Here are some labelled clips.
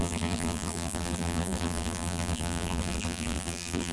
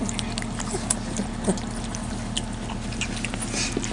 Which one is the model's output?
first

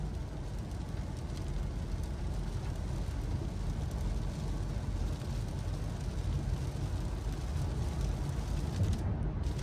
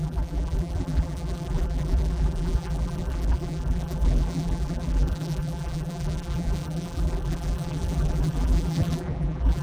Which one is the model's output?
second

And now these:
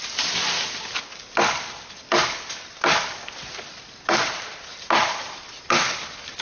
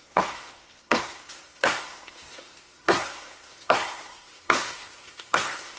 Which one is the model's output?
second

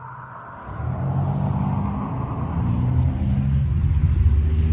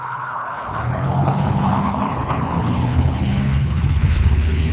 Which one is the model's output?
second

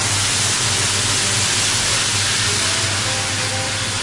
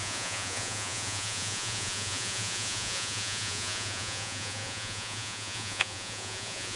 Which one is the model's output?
second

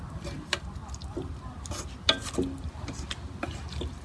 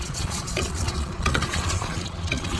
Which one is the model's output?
second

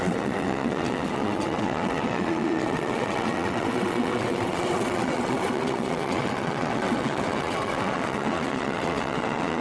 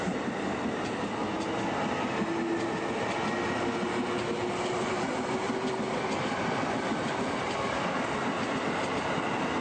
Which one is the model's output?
first